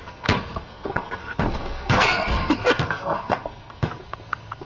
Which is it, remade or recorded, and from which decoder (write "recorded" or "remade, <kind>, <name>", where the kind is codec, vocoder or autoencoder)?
remade, codec, SNAC